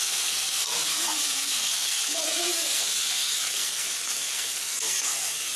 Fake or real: fake